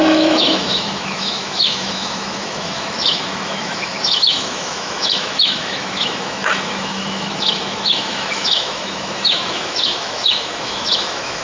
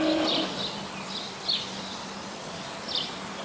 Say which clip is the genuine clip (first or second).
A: second